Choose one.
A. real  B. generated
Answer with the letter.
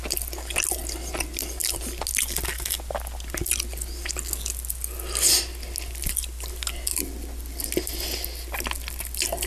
A